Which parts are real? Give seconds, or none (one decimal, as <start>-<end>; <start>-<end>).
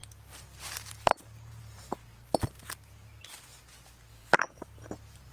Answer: 0.0-4.1; 4.6-5.3